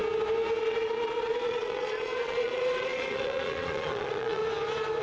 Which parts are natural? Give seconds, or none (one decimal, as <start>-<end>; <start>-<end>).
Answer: 0.0-0.6; 4.4-5.0